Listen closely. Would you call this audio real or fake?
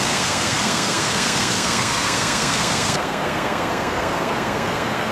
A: fake